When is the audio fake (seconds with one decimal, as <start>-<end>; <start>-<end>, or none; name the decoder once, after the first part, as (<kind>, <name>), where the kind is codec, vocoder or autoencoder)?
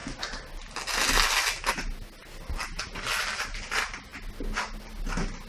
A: none